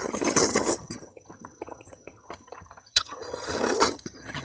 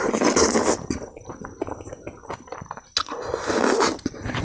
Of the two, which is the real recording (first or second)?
second